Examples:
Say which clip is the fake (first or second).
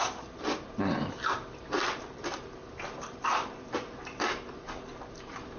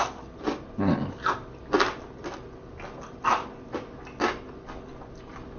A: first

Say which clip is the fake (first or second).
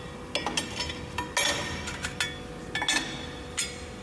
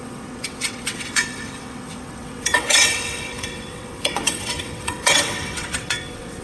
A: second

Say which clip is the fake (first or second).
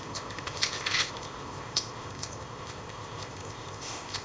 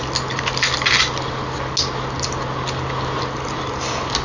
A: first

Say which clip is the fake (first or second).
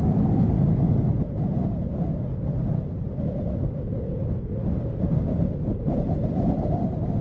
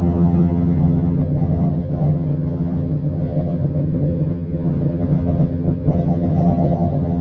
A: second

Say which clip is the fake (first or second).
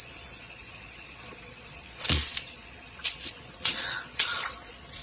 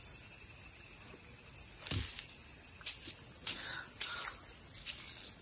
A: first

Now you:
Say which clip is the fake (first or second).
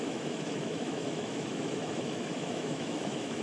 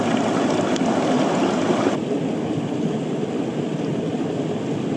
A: first